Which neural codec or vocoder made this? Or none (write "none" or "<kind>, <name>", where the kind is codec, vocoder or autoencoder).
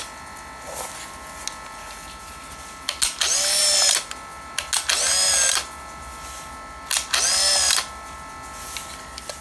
none